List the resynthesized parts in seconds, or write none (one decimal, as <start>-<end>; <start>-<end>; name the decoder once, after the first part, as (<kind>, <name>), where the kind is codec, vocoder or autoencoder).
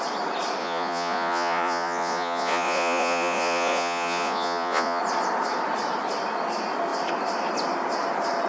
0.6-5.0 (vocoder, Vocos)